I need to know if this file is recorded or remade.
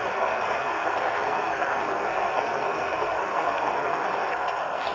remade